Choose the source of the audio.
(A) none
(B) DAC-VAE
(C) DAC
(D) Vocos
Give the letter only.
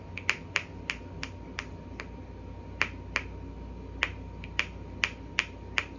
A